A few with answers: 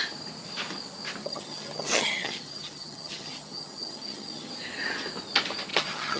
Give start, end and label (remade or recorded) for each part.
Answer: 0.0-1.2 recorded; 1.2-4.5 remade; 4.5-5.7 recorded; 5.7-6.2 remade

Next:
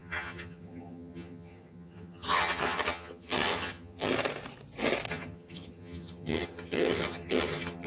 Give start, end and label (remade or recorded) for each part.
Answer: 0.0-4.1 remade; 4.1-5.1 recorded; 5.1-7.9 remade